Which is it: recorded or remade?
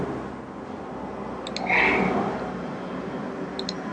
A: recorded